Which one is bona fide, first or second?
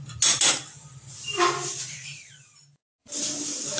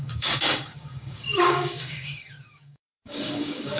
first